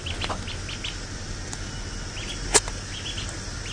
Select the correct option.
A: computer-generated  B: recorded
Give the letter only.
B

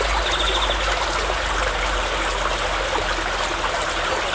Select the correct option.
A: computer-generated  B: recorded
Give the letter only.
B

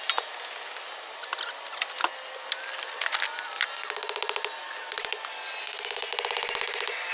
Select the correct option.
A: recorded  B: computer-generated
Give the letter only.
A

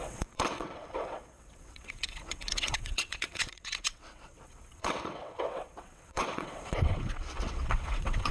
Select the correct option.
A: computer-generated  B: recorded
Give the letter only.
A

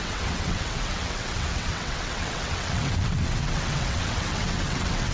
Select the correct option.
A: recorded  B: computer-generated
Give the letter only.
B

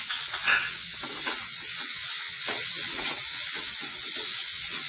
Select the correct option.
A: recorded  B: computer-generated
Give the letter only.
B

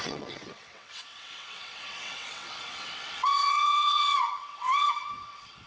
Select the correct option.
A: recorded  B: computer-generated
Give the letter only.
B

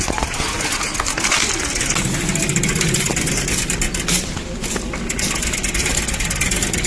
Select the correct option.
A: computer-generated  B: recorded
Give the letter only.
B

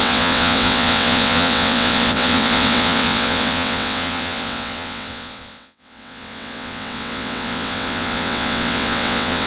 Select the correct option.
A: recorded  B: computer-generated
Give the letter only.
B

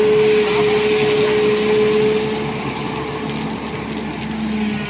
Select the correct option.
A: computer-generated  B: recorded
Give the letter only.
B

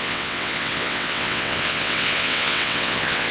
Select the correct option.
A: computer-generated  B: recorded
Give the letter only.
A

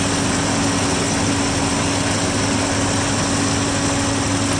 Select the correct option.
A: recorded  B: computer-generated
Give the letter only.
A